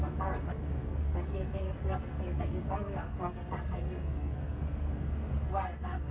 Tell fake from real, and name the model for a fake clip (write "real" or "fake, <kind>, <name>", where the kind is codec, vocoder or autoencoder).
fake, codec, SNAC